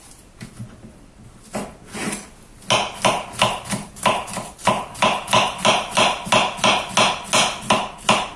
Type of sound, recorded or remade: recorded